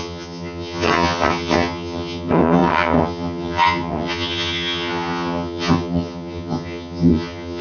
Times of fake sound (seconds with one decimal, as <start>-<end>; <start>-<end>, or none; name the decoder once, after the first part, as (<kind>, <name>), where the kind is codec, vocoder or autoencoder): 0.0-7.6 (vocoder, HiFi-GAN)